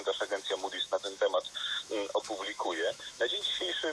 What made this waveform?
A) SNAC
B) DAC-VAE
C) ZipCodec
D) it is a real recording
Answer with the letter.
B